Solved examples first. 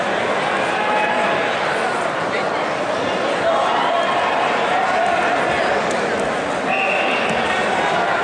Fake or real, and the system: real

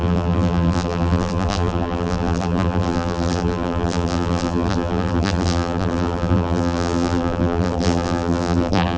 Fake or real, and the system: fake, vocoder, BigVGAN v2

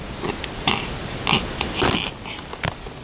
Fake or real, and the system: real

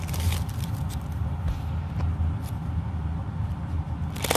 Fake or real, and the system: real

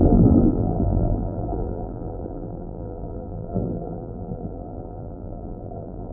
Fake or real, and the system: fake, vocoder, BigVGAN v2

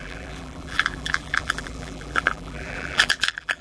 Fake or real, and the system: fake, vocoder, BigVGAN v2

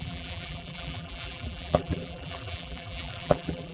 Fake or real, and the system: fake, vocoder, BigVGAN v2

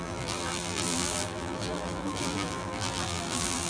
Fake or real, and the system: fake, vocoder, BigVGAN v2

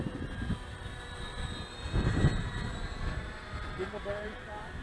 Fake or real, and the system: fake, vocoder, BigVGAN v2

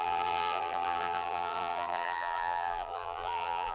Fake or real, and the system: fake, vocoder, BigVGAN v2